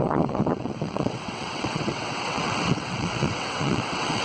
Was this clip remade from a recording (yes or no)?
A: yes